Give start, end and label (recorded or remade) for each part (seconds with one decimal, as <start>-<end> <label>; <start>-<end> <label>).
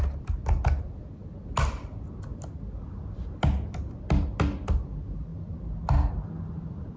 0.0-7.0 recorded